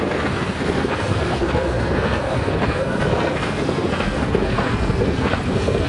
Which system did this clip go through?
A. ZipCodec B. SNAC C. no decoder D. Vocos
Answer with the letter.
B